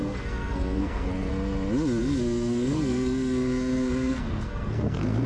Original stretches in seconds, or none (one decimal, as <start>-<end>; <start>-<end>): 1.3-2.0